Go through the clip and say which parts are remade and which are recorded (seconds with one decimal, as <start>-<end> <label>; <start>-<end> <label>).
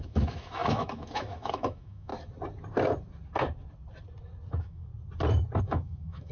0.0-2.1 remade; 2.1-4.5 recorded; 4.5-4.9 remade; 4.9-5.6 recorded; 5.6-6.3 remade